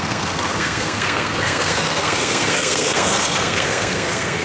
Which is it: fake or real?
fake